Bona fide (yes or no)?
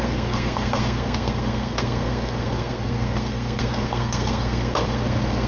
no